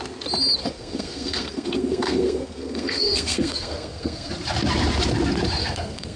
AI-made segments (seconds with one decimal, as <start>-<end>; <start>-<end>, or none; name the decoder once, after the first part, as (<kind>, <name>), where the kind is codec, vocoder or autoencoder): 0.6-4.3 (codec, SNAC); 5.6-6.2